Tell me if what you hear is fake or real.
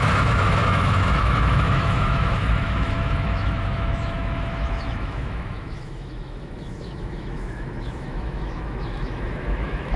fake